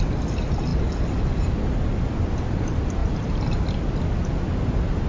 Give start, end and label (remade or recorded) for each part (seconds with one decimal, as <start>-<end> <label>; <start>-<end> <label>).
0.0-5.1 recorded